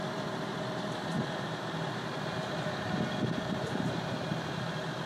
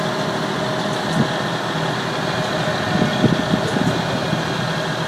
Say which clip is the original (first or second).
second